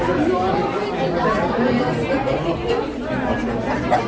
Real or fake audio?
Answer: real